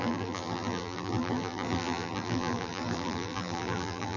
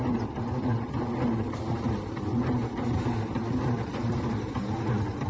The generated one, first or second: first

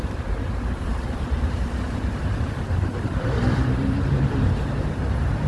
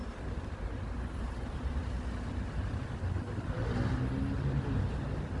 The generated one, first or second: first